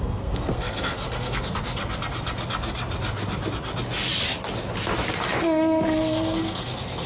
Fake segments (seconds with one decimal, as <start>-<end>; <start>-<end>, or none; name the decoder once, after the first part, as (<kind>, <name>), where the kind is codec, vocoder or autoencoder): 0.0-1.8 (codec, SNAC); 5.4-7.1